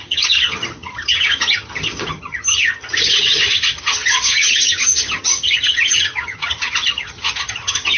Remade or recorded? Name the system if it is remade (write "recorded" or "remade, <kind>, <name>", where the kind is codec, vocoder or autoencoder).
remade, vocoder, HiFi-GAN